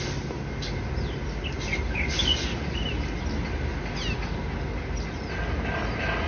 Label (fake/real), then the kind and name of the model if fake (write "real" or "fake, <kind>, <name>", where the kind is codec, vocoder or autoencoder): real